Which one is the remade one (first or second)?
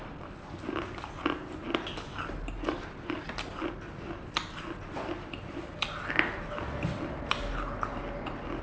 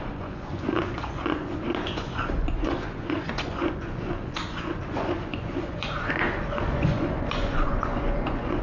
second